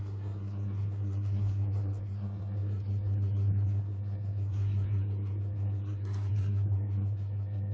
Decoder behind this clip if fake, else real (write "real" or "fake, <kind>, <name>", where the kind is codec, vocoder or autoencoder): fake, codec, SNAC